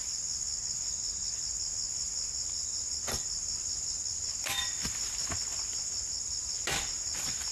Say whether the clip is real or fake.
real